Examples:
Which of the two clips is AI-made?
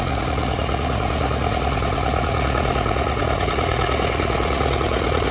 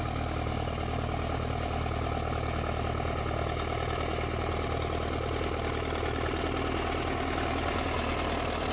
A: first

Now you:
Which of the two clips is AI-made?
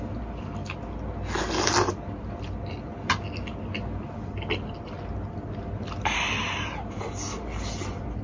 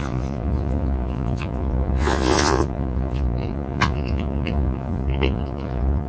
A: second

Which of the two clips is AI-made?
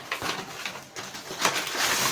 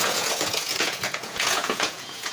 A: second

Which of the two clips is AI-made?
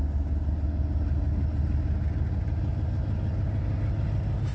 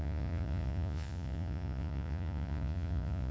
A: second